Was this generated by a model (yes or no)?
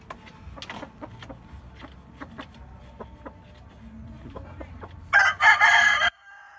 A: no